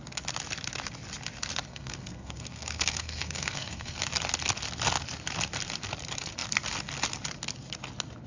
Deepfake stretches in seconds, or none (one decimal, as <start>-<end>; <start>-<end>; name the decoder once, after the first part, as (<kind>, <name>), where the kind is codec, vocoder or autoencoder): 1.7-4.0 (codec, SNAC)